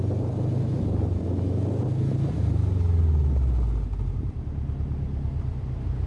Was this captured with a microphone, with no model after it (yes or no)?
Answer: yes